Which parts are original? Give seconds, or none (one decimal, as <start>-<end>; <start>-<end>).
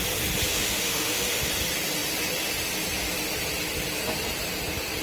0.0-0.5; 1.5-5.0